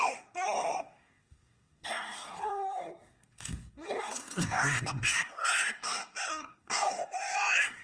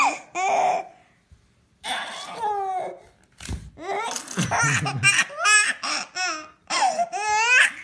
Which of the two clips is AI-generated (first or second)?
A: first